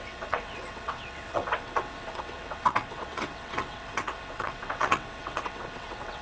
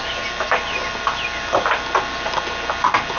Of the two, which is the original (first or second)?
second